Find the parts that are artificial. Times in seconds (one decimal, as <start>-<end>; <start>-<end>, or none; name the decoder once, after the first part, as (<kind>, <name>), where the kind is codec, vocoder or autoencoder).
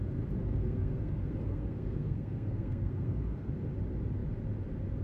0.5-3.5 (codec, SNAC)